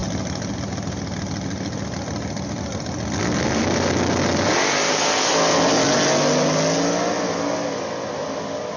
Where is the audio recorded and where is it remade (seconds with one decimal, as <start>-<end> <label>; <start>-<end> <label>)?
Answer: 0.0-8.8 recorded